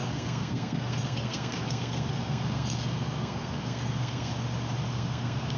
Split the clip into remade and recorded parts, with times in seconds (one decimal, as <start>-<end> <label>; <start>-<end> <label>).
0.0-4.3 remade; 4.3-4.9 recorded; 4.9-5.6 remade